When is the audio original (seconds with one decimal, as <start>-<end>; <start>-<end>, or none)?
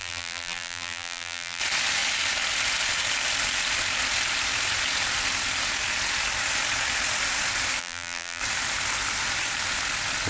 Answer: 1.6-7.8; 8.4-10.3